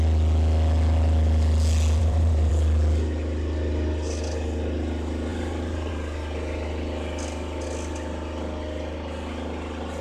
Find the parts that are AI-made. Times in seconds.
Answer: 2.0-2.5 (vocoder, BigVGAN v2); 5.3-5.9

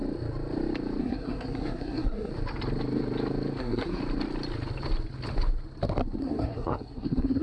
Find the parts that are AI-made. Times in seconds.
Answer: 1.0-2.3 (codec, SNAC); 3.6-4.0; 6.2-7.4